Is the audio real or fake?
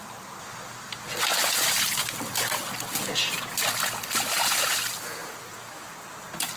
real